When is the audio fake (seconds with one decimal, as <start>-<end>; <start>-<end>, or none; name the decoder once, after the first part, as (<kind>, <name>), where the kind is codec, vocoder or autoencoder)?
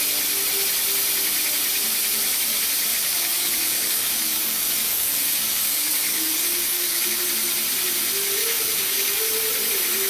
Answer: 2.9-7.2 (codec, DAC); 8.4-9.3